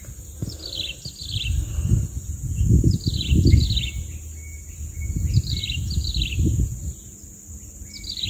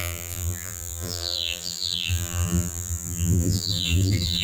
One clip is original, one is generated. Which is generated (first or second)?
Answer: second